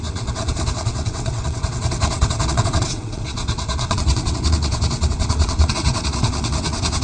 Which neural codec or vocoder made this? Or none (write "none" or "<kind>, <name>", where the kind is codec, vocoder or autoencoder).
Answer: vocoder, WaveNeXt